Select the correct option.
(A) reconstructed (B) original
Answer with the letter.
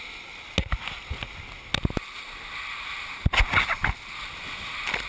B